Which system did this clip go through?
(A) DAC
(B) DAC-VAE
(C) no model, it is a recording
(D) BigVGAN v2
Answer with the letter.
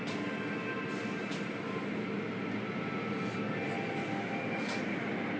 C